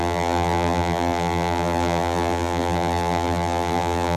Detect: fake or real fake